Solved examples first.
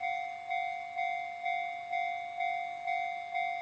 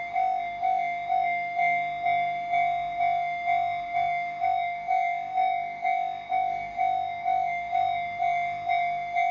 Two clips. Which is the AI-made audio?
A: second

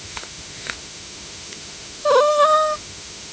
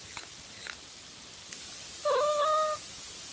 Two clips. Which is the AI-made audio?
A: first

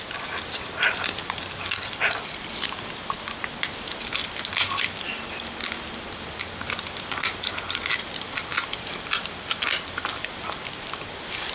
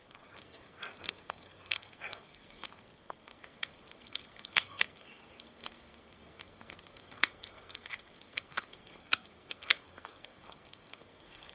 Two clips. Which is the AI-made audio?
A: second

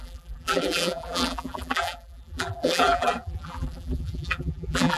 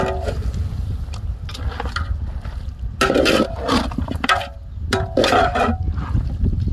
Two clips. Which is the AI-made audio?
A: first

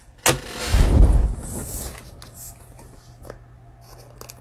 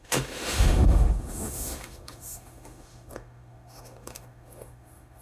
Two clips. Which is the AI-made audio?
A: second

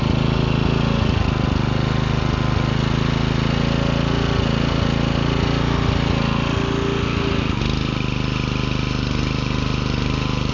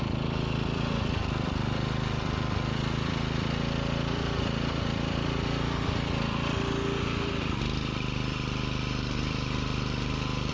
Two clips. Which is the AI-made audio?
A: second